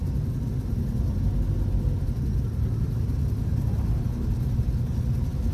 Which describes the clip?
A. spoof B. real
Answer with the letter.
B